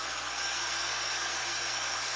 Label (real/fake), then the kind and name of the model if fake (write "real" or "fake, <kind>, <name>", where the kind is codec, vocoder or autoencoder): fake, codec, SNAC